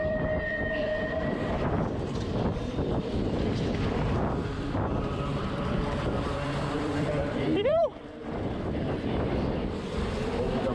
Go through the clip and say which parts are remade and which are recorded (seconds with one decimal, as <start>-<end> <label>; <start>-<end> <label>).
0.0-10.7 remade